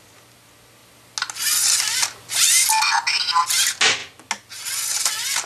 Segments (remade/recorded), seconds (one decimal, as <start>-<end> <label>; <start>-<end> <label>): 0.0-5.5 recorded